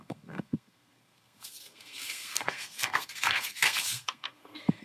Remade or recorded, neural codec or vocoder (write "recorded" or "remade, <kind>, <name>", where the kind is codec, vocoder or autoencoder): remade, codec, SNAC